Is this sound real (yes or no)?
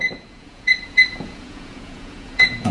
no